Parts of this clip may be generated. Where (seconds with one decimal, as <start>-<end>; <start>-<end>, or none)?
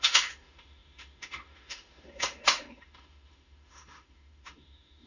0.0-5.1